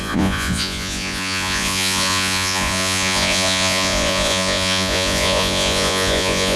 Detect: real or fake fake